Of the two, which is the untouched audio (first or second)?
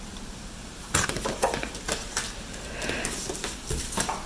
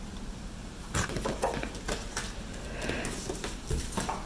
second